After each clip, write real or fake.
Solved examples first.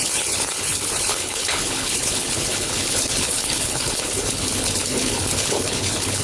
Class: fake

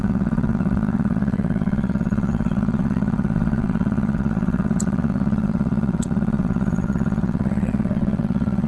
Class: fake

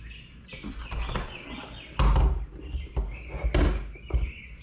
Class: real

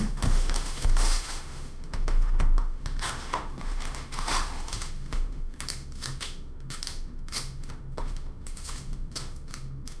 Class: fake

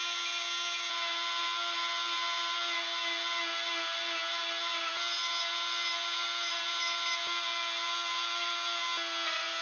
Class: real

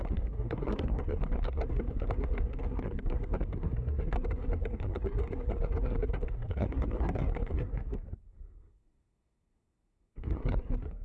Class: fake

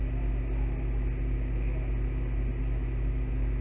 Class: real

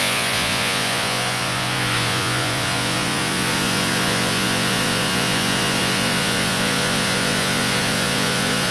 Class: fake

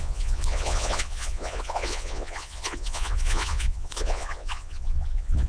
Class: fake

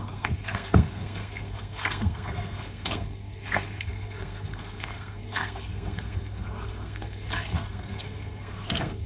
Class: fake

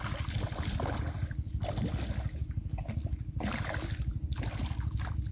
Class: real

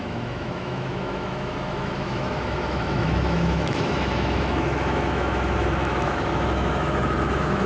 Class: fake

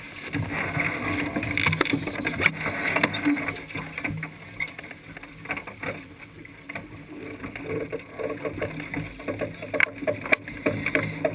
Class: real